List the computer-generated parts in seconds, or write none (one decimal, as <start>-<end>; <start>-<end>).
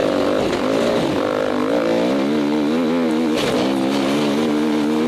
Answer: none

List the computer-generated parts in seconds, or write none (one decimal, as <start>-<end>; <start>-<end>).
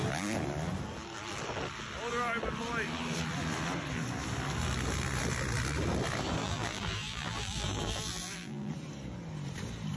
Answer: 6.4-8.7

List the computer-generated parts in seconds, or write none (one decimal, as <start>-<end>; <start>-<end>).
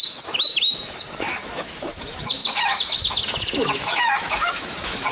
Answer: 0.0-5.1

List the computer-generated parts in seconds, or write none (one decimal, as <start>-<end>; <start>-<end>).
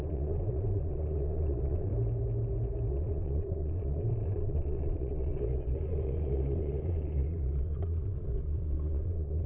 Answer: 0.0-1.9; 2.9-9.5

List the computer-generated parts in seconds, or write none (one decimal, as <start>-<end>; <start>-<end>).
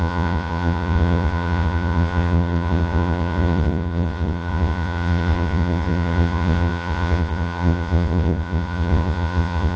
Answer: 0.0-9.8